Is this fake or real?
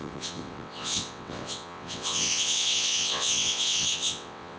fake